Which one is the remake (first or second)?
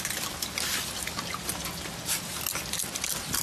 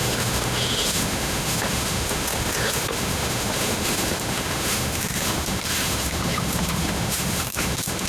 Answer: second